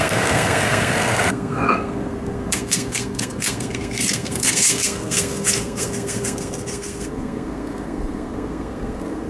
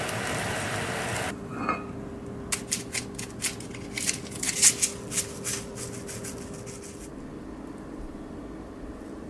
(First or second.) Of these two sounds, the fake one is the first